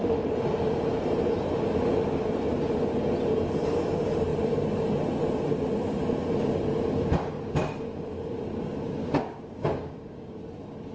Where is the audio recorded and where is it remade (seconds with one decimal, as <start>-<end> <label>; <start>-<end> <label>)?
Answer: 0.0-9.0 recorded; 9.0-10.4 remade; 10.4-10.9 recorded